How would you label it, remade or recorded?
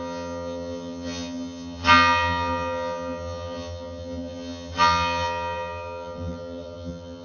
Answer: remade